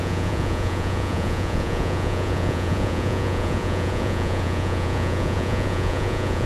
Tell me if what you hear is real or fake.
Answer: fake